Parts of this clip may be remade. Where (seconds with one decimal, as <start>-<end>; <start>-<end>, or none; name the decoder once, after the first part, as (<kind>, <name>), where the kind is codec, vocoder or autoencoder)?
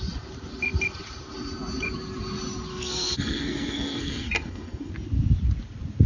2.7-4.9 (codec, SNAC)